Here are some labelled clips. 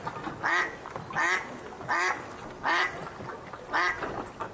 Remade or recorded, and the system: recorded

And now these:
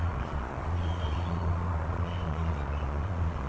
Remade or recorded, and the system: remade, vocoder, Vocos